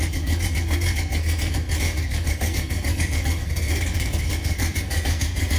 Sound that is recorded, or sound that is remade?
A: remade